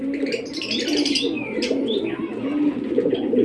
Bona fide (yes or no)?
yes